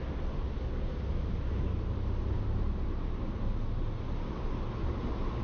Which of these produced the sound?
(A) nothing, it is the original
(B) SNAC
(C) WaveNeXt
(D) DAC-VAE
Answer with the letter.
A